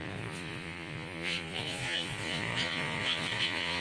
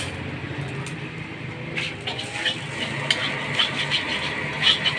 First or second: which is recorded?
second